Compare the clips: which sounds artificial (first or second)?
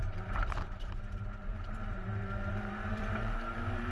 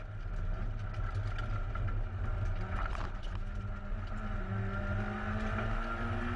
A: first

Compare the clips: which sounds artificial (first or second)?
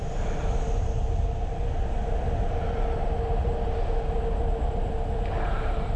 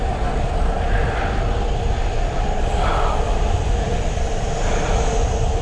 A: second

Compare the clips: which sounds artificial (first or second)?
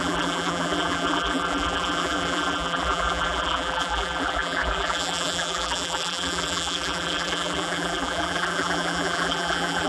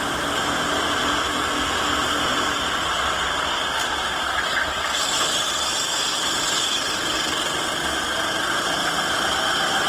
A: first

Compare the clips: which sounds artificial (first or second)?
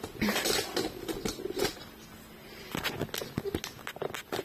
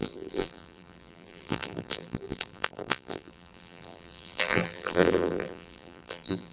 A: second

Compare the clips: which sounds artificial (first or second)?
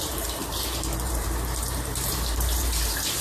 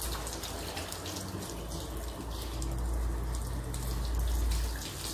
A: first